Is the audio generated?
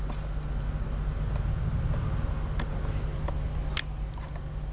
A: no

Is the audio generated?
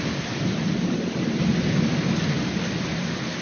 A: no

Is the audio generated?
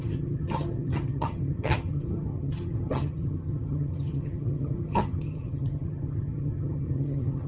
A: yes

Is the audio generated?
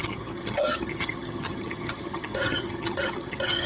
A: yes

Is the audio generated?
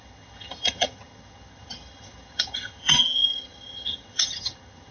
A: yes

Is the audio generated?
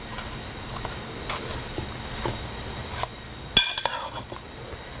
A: no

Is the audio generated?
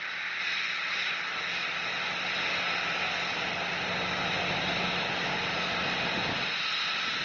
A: no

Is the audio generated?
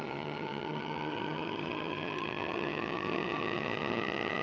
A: yes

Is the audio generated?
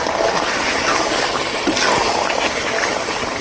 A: no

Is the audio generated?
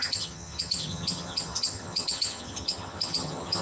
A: yes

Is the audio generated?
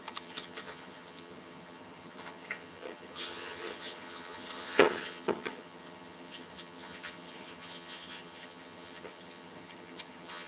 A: yes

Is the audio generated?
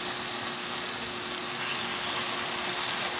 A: no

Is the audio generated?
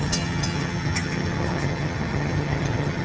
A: yes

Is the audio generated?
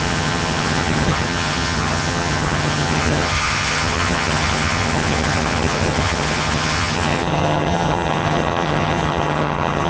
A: yes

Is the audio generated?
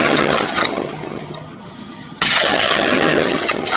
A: yes